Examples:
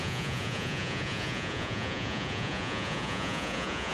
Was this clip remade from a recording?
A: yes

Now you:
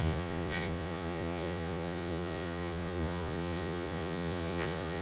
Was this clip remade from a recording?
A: yes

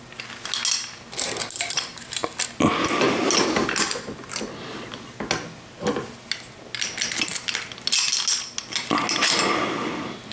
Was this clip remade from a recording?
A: no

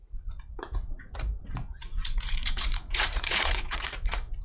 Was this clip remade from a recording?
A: yes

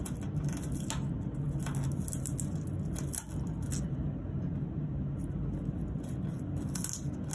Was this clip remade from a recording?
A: no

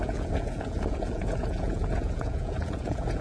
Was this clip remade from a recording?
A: yes